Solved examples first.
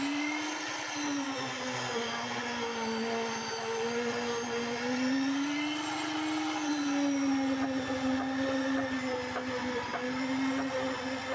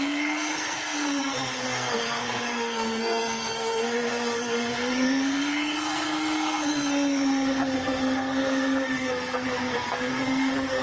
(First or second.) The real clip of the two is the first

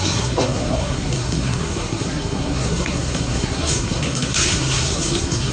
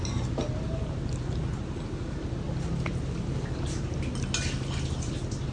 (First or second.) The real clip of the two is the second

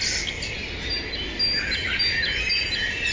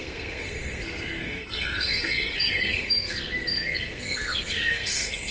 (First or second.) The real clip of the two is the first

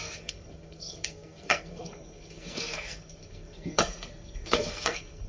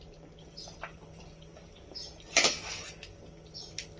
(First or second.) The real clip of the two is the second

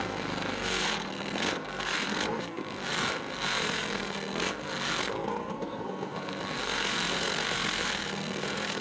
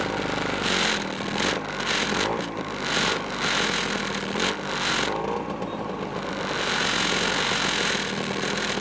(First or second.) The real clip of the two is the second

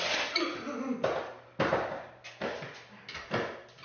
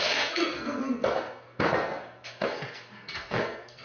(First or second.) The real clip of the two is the first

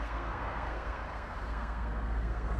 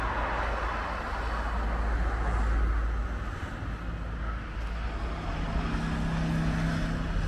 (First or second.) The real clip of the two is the second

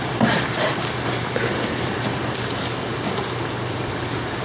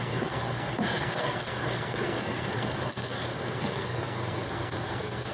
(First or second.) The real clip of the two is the first